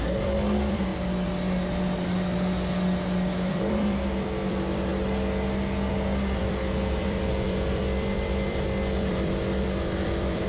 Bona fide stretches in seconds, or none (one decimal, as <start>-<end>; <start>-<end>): 0.9-3.5; 4.9-5.9